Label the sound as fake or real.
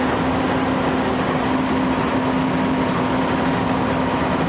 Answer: real